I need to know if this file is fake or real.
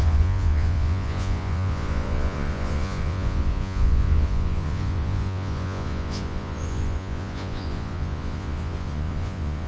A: fake